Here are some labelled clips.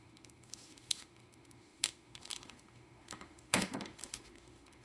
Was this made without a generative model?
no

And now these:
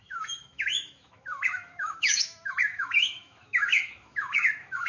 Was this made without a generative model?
no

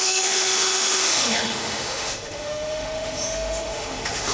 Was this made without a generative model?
no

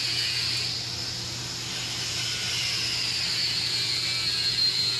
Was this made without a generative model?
yes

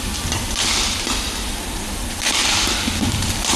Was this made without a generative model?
yes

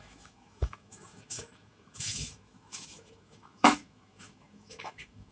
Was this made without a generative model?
no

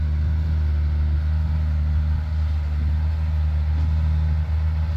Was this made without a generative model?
yes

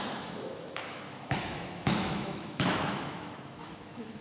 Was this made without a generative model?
no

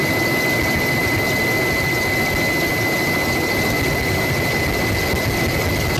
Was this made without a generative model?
yes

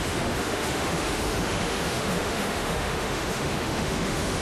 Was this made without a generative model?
no